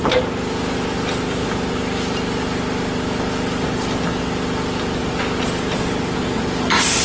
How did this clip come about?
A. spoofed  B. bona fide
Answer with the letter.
B